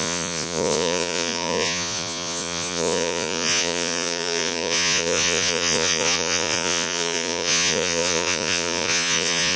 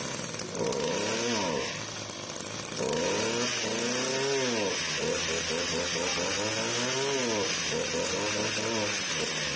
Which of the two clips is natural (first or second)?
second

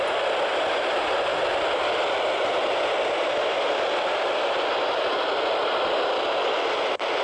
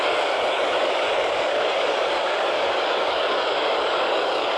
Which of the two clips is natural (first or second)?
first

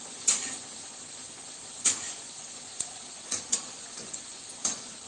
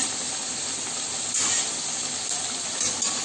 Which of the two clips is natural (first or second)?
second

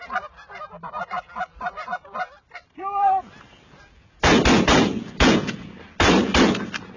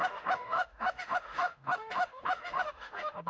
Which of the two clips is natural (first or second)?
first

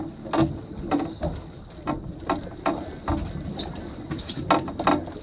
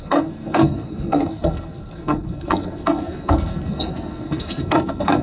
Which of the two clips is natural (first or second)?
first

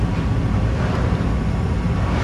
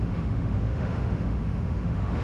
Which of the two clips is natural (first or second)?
first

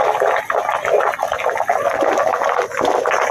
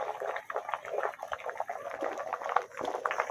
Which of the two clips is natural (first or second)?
first